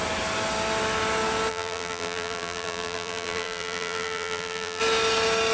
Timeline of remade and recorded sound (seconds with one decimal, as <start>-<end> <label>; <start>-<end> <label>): 0.0-1.5 recorded; 1.5-4.8 remade; 4.8-5.5 recorded